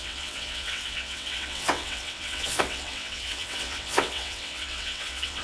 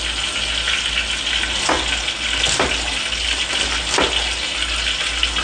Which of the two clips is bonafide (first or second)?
second